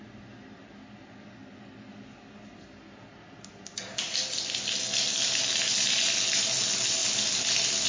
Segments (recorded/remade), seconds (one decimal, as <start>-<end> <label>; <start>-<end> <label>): 0.0-7.9 recorded